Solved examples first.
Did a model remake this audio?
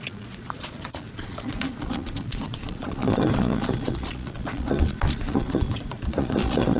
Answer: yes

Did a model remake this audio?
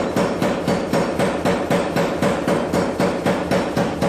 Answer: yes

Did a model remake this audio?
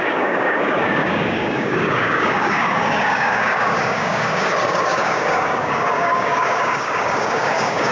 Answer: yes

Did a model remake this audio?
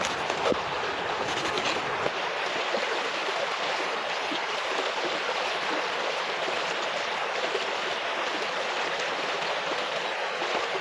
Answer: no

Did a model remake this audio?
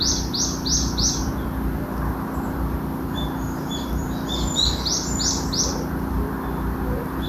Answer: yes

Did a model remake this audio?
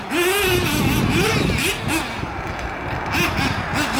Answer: no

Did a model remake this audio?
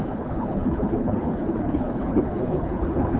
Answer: yes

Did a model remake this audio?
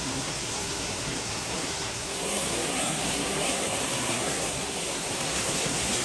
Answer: yes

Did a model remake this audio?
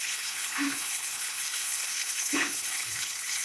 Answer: yes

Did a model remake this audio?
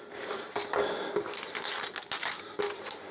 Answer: no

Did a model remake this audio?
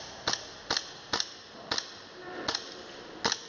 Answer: no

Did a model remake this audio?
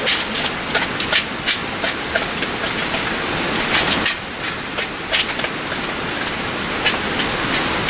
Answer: no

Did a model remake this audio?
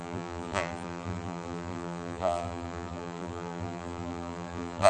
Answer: yes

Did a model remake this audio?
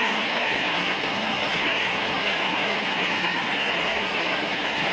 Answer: yes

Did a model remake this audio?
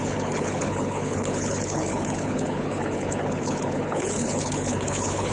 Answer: yes